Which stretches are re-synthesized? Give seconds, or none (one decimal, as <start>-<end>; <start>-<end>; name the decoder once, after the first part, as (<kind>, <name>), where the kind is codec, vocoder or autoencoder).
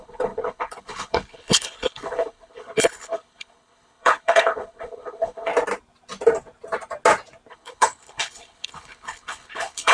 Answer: 0.0-5.5 (codec, HILCodec); 7.5-9.9